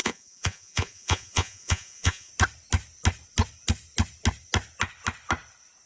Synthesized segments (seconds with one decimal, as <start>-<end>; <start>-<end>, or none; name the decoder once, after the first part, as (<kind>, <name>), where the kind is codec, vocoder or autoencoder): 0.0-2.3 (vocoder, Vocos)